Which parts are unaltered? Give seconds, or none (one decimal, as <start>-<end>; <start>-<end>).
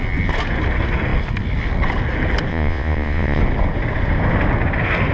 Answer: 0.0-2.5; 3.4-5.1